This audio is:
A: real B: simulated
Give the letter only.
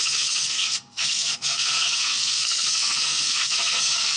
B